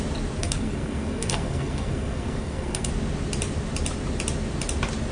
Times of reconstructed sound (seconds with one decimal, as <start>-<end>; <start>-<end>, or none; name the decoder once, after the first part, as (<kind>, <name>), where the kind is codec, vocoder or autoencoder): 0.4-2.9 (codec, SNAC)